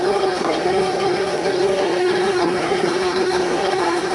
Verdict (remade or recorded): remade